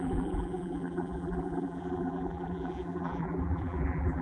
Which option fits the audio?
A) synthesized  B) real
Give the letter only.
A